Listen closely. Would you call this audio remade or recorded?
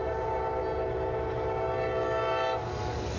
recorded